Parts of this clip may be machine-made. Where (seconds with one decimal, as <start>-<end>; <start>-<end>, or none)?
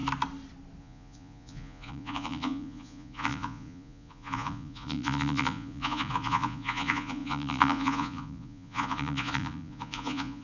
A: 0.8-10.4